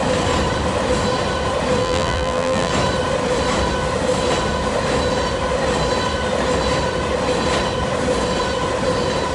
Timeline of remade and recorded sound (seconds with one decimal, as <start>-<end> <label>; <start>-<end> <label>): 0.0-1.8 recorded; 1.8-2.7 remade; 2.7-9.3 recorded